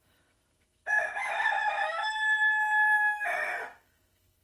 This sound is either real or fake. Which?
fake